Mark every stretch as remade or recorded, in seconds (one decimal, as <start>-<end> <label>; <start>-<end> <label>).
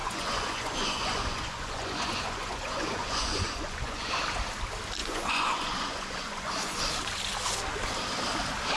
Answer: 0.0-4.1 remade; 4.1-5.0 recorded; 5.0-6.8 remade; 6.8-8.8 recorded